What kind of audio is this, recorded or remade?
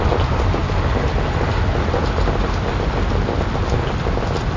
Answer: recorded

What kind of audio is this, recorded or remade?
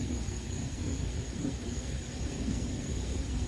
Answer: remade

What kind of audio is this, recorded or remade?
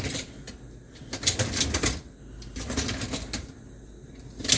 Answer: recorded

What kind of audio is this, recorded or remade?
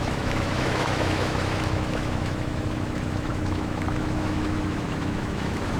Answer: remade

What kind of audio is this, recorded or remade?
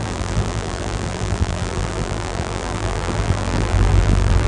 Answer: remade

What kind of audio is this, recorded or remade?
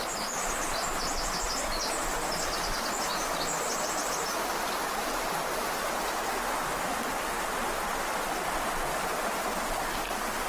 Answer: recorded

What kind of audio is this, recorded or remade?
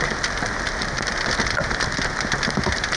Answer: recorded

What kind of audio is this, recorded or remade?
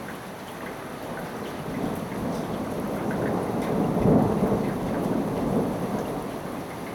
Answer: recorded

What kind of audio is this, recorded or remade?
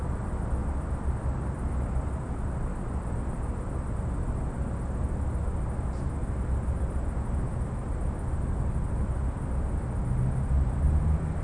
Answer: recorded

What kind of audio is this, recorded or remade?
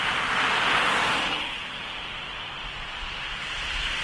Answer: recorded